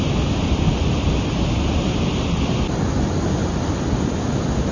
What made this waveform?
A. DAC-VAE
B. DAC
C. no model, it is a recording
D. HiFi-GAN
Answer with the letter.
C